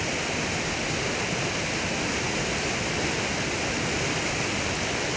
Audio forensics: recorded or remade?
recorded